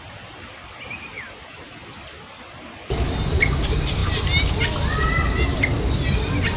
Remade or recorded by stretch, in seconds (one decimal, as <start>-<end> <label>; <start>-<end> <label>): 0.0-6.6 recorded